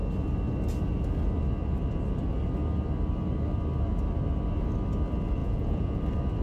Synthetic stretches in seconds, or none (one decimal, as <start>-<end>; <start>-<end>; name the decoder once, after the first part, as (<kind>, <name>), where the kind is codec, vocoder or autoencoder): 5.4-6.0 (vocoder, Vocos)